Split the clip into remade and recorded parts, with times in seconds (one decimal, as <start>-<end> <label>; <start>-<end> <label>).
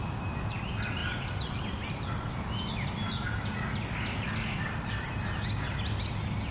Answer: 0.0-6.5 recorded